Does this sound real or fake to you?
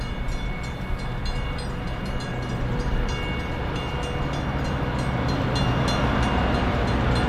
real